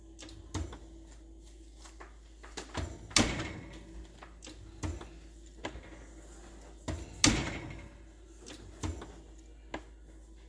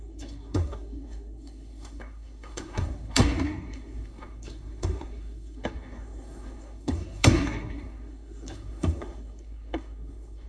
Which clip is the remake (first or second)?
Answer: second